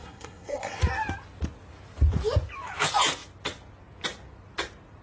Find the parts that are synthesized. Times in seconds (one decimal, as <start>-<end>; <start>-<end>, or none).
0.0-0.8